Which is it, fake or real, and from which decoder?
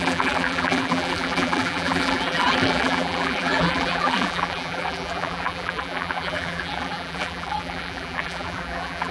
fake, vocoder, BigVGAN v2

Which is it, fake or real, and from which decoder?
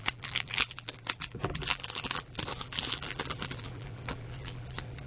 fake, vocoder, BigVGAN v2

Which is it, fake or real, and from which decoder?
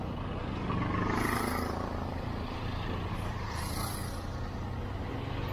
real